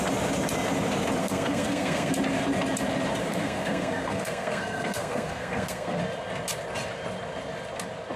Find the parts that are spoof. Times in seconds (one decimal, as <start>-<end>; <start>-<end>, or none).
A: 1.2-2.1; 3.2-6.0